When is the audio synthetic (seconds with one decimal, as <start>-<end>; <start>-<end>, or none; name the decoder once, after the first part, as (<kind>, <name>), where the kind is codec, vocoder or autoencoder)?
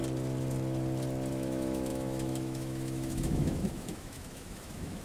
1.3-5.0 (autoencoder, DAC-VAE)